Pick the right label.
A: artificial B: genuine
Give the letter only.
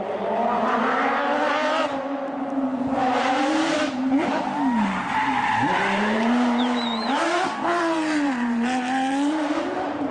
A